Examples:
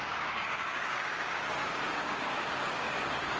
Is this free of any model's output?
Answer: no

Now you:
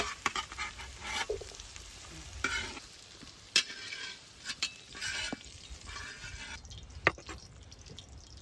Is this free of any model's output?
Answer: yes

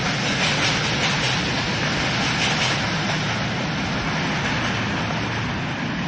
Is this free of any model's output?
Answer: yes